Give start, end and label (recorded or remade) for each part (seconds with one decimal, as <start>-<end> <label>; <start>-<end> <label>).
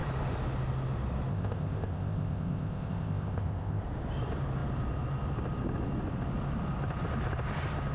0.0-1.3 recorded; 1.3-3.8 remade; 3.8-7.9 recorded